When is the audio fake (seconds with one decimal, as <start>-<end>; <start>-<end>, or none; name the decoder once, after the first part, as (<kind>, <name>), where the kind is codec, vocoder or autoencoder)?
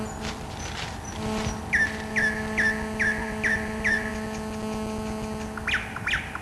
3.2-4.1 (vocoder, BigVGAN v2)